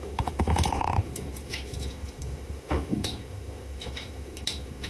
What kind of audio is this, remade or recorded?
remade